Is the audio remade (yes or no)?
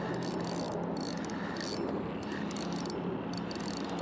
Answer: no